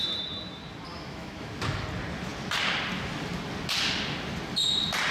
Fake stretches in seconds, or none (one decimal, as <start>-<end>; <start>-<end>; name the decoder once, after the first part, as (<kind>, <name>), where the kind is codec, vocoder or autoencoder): 0.9-1.5 (autoencoder, DAC-VAE)